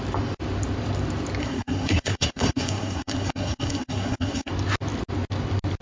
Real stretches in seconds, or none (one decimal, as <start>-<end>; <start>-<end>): 0.0-1.4; 4.5-5.8